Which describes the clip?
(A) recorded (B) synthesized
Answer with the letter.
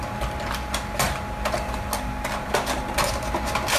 A